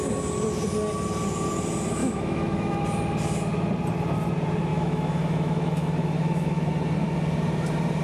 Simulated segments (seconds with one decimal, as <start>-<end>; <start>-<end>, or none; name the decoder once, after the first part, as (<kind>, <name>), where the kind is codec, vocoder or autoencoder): 2.0-2.8 (autoencoder, DAC-VAE); 4.7-6.7